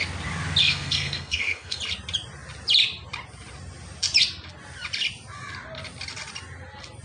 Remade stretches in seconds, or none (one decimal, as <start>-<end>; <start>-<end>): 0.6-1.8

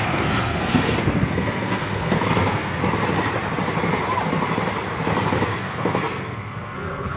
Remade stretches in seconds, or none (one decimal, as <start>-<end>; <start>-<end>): 0.0-2.8; 5.6-7.2

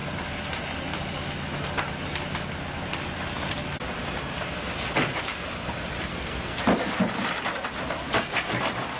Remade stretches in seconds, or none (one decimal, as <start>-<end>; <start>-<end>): 6.1-6.6

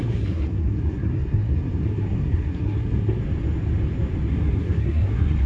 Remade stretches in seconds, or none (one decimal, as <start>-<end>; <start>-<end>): 0.0-3.2; 4.3-5.5

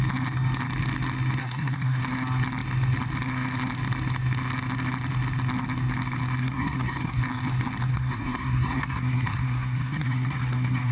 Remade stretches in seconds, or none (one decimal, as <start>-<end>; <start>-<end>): 1.4-2.0; 6.4-7.2; 7.9-10.9

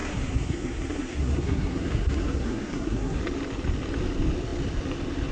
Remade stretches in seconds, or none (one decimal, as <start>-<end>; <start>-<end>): 0.0-3.2

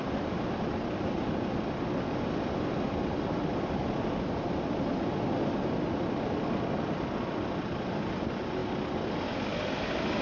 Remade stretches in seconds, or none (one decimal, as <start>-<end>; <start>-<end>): none

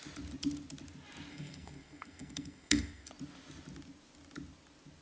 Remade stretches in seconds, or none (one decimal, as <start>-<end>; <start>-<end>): 1.3-3.1